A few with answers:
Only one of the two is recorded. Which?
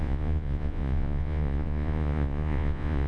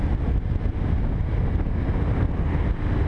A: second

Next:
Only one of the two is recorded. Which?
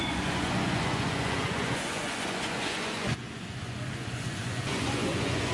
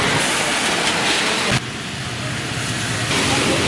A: second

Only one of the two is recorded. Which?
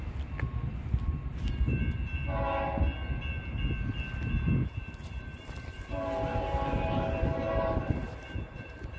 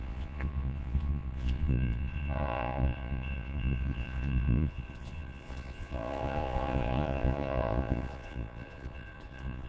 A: first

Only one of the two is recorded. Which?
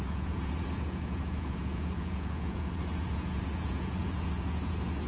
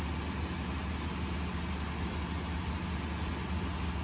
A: second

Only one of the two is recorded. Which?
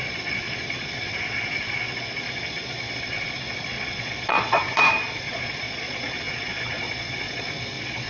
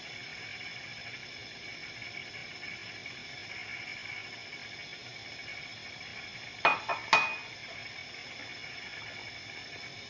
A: second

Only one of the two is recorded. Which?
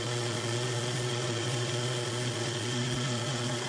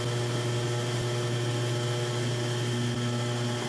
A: second